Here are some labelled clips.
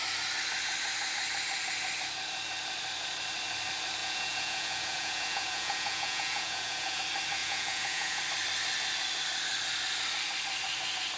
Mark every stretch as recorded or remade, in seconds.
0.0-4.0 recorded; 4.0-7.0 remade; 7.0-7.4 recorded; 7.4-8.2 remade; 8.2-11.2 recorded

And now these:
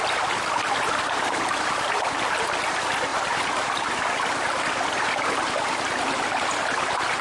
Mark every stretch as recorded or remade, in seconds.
0.0-3.1 recorded; 3.1-4.1 remade; 4.1-7.2 recorded

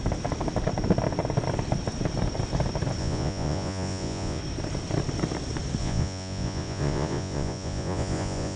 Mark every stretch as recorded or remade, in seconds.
0.0-3.0 recorded; 3.0-4.4 remade; 4.4-5.8 recorded; 5.8-8.6 remade